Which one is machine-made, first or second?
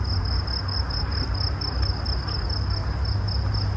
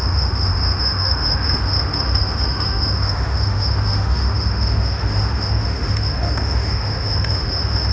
second